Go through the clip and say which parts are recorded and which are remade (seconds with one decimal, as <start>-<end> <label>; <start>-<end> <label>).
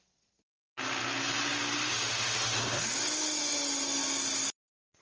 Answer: 0.0-5.0 recorded